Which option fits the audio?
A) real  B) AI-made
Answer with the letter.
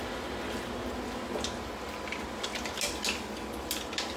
A